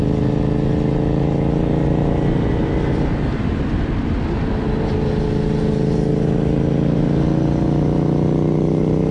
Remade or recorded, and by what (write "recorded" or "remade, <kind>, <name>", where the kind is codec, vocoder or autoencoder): recorded